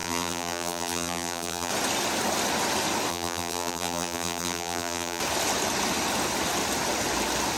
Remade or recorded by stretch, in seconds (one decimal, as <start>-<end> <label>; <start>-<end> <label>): 0.0-1.7 remade; 1.7-3.1 recorded; 3.1-5.2 remade; 5.2-7.6 recorded